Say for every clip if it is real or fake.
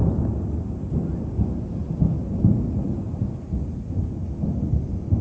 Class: real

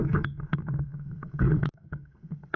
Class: fake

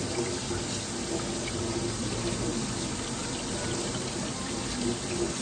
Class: real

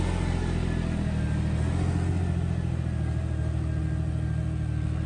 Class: real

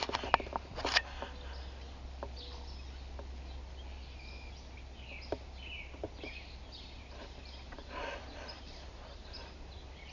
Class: real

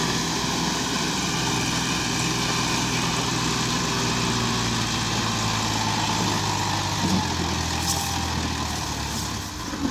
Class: real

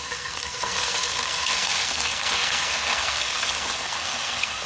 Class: fake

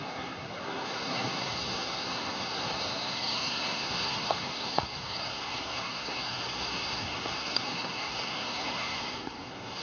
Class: fake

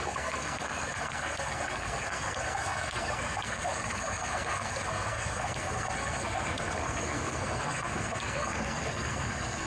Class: fake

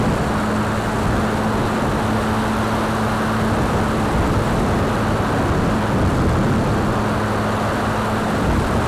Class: real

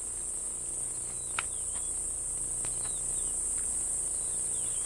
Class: real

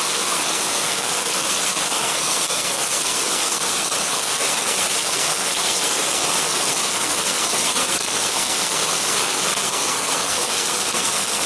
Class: fake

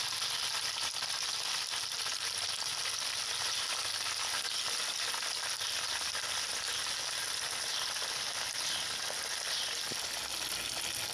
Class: real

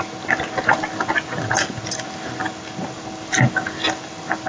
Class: real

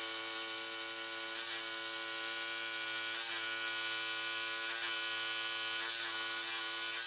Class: real